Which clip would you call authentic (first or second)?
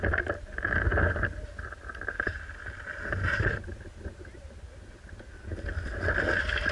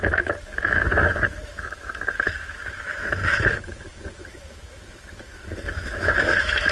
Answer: first